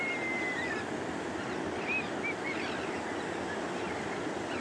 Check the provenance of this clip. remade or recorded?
recorded